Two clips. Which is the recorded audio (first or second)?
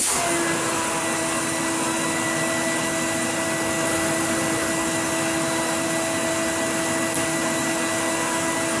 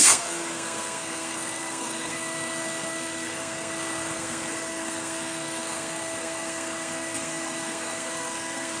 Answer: first